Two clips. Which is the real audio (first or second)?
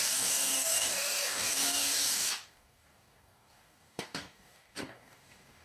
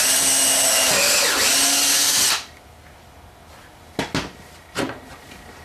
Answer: second